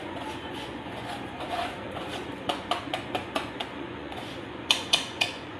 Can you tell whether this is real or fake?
fake